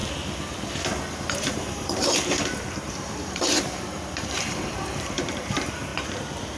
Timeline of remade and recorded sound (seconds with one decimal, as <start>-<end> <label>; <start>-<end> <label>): 0.0-1.1 recorded; 1.1-5.9 remade; 5.9-6.6 recorded